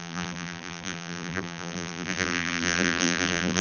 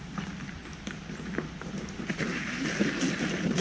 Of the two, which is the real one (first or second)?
second